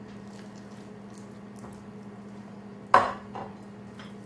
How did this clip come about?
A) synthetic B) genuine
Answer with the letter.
B